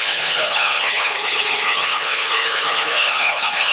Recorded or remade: remade